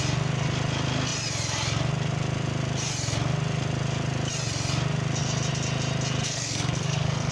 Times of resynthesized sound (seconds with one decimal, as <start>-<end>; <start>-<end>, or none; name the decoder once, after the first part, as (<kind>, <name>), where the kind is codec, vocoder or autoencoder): 6.2-7.3 (codec, SNAC)